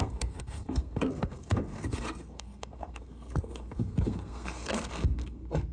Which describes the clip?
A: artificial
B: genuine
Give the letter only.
A